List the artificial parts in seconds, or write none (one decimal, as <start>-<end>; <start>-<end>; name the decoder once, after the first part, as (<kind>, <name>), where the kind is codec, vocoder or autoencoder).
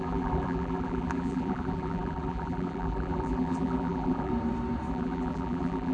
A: 0.0-4.3 (vocoder, BigVGAN v2); 4.9-5.9